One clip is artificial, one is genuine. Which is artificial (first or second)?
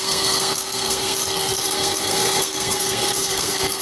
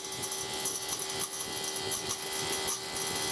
first